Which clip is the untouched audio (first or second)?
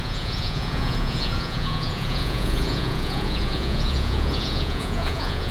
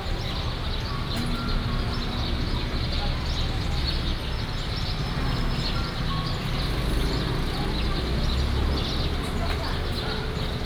second